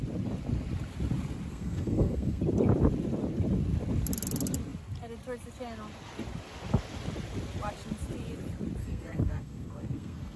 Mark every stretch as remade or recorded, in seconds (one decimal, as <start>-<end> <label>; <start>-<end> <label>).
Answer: 0.0-1.5 recorded; 1.5-2.4 remade; 2.4-8.8 recorded; 8.8-10.4 remade